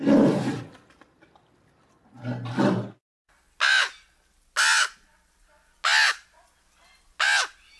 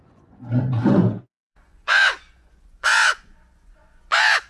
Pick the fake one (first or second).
second